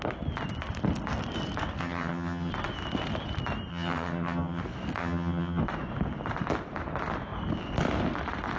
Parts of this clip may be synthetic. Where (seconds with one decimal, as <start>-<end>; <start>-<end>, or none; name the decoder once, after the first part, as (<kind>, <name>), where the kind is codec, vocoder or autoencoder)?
1.8-2.5 (vocoder, HiFi-GAN); 3.7-4.6; 5.0-5.6